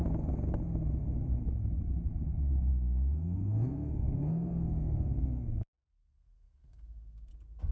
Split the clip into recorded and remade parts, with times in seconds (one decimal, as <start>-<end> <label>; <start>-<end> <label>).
0.0-2.7 recorded; 2.7-7.3 remade; 7.3-7.7 recorded